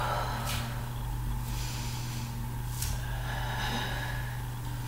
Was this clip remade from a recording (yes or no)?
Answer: no